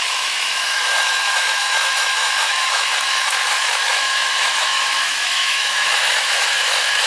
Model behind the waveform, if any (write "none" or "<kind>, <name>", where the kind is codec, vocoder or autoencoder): autoencoder, DAC-VAE